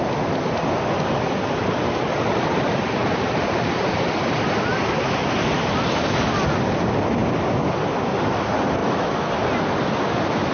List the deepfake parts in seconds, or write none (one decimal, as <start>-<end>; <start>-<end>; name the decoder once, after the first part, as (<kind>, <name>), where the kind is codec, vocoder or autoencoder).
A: 8.8-9.3 (autoencoder, DAC-VAE)